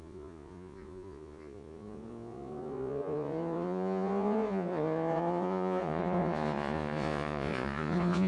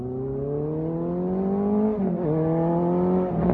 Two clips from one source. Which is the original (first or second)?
second